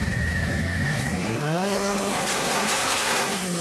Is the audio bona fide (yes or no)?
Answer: no